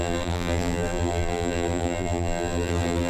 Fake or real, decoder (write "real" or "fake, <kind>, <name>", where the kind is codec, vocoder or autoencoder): fake, vocoder, BigVGAN v2